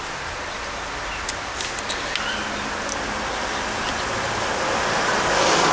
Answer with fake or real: real